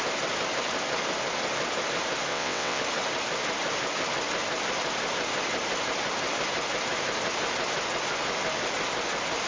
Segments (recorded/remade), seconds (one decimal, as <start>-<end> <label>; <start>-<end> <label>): 0.0-2.3 recorded; 2.3-2.8 remade; 2.8-9.5 recorded